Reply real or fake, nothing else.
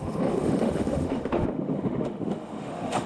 fake